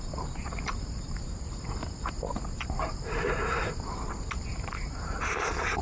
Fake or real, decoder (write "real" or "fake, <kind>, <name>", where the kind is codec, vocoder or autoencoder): real